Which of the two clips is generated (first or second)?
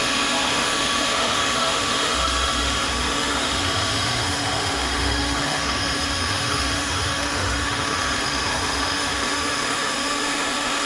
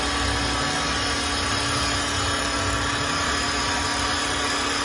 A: first